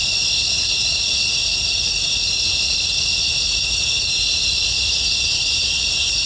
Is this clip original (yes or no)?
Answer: yes